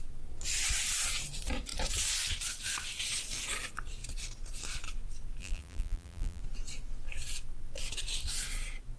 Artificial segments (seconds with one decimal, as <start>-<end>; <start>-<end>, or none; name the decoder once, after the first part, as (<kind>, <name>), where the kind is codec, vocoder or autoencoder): 5.4-6.4 (vocoder, BigVGAN v2)